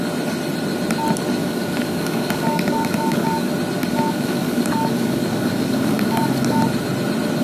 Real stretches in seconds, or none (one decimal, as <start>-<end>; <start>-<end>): 0.0-1.4; 3.5-3.9; 6.6-7.4